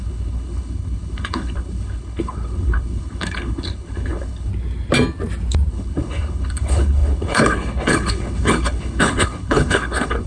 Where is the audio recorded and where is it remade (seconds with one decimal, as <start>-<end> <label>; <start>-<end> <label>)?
0.0-4.5 remade; 4.5-5.7 recorded; 5.7-10.3 remade